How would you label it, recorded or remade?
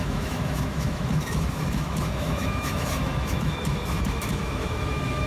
remade